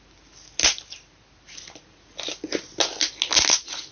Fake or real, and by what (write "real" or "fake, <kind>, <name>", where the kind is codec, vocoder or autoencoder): real